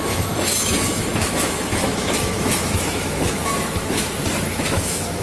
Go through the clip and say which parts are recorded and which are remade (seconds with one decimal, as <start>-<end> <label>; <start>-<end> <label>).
0.0-5.2 remade